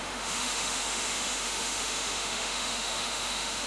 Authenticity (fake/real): fake